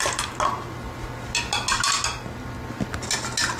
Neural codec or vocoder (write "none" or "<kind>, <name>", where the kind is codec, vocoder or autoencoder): none